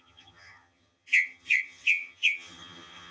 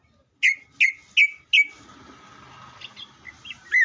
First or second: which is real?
second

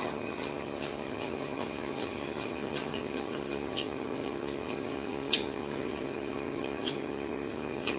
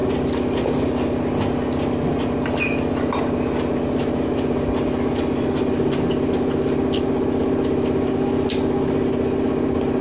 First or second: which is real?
second